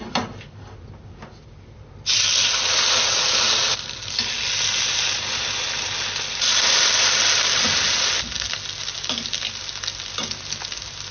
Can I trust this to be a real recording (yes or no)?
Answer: yes